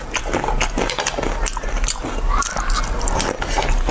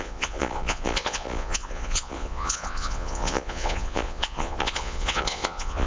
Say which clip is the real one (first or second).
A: first